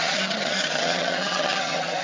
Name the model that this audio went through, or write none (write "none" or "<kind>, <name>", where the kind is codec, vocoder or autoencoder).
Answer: vocoder, HiFi-GAN